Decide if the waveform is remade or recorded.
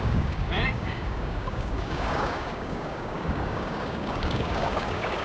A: remade